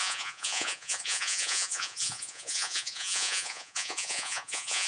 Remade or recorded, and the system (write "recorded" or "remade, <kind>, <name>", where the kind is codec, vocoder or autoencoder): remade, vocoder, Vocos